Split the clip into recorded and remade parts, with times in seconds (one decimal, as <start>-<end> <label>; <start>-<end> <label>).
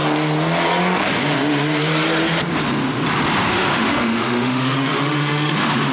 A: 0.0-3.5 recorded; 3.5-5.9 remade